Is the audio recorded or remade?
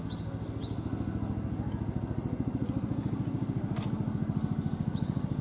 recorded